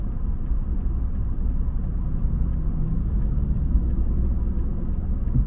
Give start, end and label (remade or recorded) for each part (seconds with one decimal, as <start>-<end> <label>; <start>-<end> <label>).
0.0-1.9 recorded; 1.9-3.6 remade; 3.6-5.5 recorded